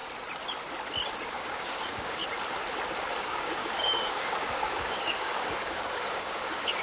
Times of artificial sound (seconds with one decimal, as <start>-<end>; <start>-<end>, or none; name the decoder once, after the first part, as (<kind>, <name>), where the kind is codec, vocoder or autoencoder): 1.2-2.2 (codec, DAC); 3.2-6.8